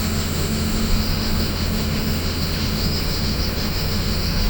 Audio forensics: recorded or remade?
remade